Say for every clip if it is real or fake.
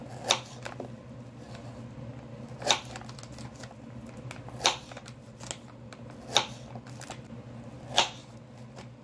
real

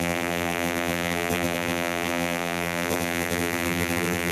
fake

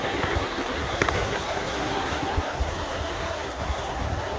fake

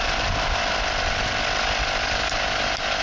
real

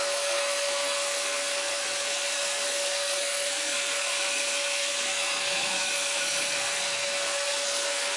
fake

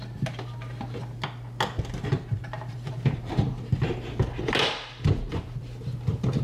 real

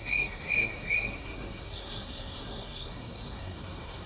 fake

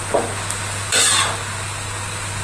real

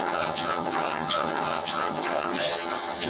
fake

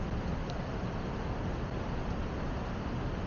real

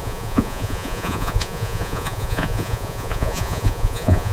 fake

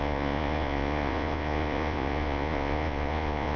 fake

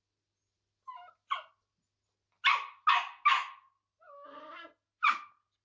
real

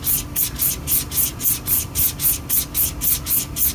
real